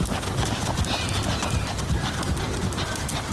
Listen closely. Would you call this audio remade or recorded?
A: recorded